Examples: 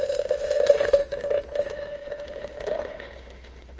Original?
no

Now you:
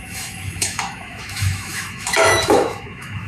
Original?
no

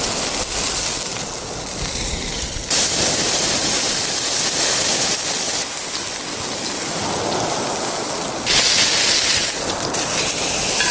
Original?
yes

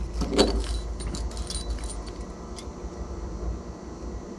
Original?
yes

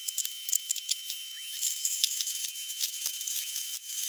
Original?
no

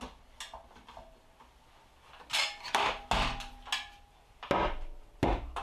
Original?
yes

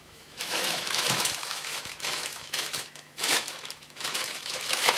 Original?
no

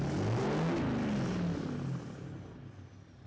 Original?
yes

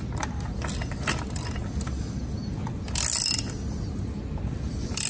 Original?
yes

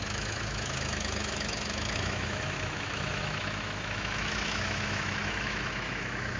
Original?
no